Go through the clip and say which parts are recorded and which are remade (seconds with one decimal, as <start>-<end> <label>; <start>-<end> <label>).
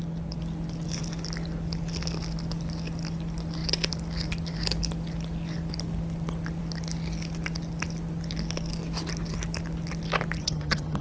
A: 0.0-10.4 recorded; 10.4-11.0 remade